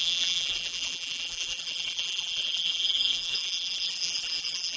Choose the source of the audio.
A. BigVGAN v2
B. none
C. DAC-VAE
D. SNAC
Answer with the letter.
A